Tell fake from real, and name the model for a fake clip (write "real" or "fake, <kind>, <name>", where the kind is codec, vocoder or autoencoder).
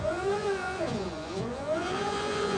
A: fake, vocoder, Vocos